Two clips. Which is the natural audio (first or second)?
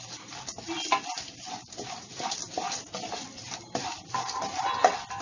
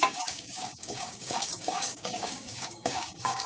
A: first